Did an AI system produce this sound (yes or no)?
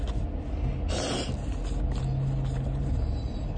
no